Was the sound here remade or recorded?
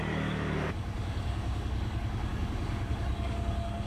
remade